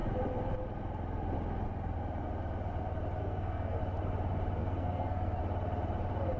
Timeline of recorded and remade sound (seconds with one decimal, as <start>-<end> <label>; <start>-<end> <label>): 0.0-3.2 recorded; 3.2-3.8 remade; 3.8-4.6 recorded; 4.6-5.4 remade; 5.4-6.4 recorded

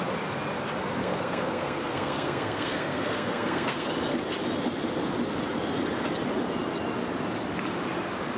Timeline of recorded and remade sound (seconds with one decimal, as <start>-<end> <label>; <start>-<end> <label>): 0.0-1.0 recorded; 1.0-3.9 remade; 3.9-8.4 recorded